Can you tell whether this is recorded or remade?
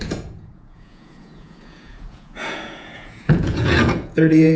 remade